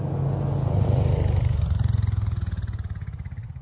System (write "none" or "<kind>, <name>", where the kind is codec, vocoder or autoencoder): none